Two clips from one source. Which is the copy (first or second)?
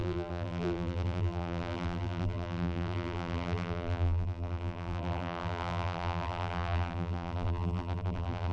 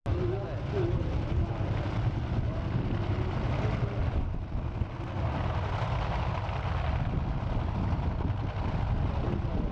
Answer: first